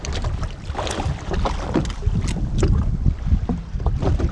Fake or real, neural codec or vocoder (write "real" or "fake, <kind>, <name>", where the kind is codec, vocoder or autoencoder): real